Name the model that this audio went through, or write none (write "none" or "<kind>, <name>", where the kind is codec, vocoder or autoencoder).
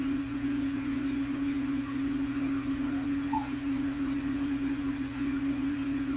vocoder, Vocos